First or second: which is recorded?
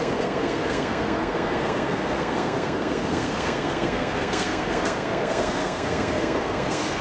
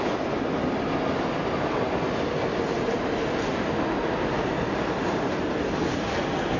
second